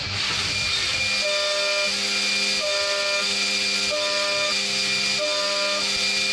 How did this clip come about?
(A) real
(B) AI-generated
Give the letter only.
A